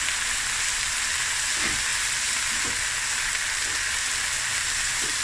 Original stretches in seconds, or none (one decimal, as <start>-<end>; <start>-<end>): 0.0-5.2